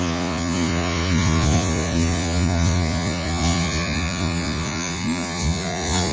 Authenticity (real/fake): fake